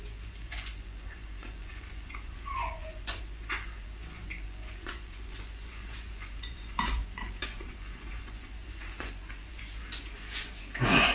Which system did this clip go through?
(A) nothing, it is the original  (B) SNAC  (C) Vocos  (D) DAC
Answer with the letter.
C